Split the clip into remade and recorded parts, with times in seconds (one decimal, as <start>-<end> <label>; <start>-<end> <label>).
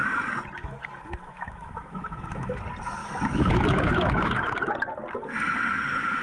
0.0-0.6 recorded; 0.6-2.6 remade; 2.6-3.0 recorded; 3.0-4.6 remade; 4.6-6.2 recorded